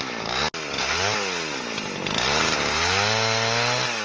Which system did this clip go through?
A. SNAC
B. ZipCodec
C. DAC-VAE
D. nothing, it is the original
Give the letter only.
D